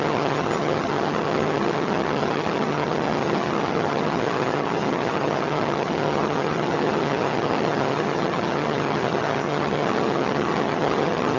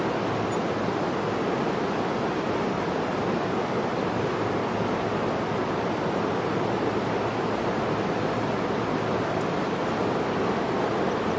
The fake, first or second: first